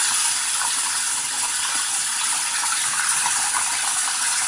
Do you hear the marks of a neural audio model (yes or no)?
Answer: no